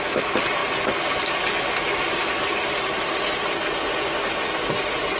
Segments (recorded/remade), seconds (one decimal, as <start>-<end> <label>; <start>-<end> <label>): 0.0-5.2 recorded